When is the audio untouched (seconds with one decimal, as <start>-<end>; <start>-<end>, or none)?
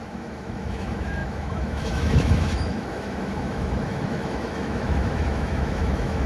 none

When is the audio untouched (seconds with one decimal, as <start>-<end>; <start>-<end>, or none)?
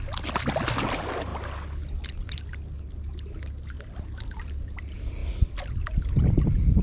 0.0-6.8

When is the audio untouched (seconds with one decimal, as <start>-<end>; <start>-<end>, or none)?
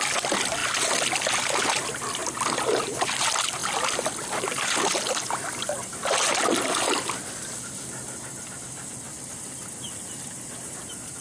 0.0-11.2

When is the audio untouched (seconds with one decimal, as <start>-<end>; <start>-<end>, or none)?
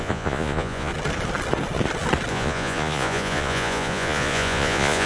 0.9-2.3